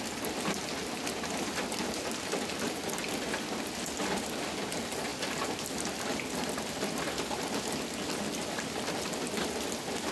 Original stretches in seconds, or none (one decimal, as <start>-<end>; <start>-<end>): 0.0-10.1